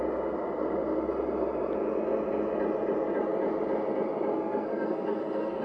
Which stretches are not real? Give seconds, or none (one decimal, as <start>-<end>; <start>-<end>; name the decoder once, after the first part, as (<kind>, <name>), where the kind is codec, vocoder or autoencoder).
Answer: 4.3-5.6 (codec, SNAC)